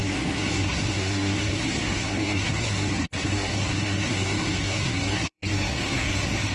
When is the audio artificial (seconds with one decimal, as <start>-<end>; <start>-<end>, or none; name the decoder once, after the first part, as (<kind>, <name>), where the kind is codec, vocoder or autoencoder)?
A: 0.0-6.5 (codec, SNAC)